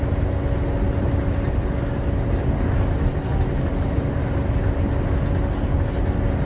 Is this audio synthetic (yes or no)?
no